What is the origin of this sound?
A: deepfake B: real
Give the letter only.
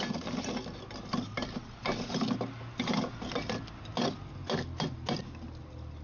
B